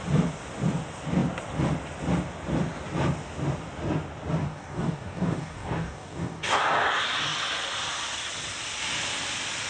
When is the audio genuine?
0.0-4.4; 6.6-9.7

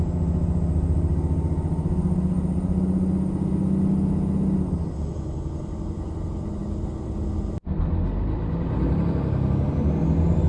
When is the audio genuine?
0.0-10.5

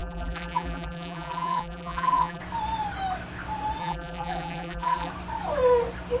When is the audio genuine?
2.4-3.8; 5.1-6.2

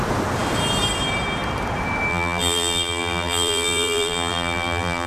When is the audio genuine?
0.0-2.1

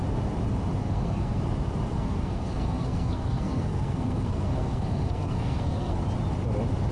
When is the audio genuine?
0.0-0.8; 1.4-1.9; 6.0-6.9

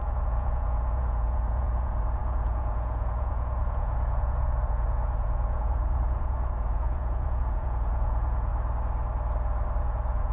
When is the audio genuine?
8.5-9.8

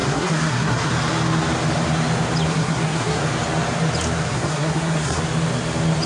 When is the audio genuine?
0.9-2.5; 3.2-4.3; 5.2-6.1